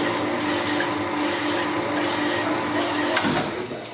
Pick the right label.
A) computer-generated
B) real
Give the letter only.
B